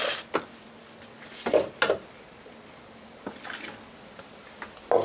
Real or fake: real